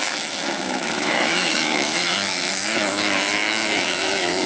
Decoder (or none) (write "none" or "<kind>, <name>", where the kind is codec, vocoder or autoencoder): autoencoder, DAC-VAE